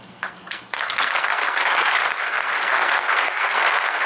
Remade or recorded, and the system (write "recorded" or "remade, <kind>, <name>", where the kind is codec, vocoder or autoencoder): remade, codec, SNAC